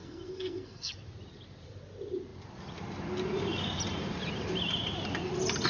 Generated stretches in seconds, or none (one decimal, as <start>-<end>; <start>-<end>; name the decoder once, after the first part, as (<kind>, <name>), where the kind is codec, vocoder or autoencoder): 0.0-0.9 (codec, SNAC)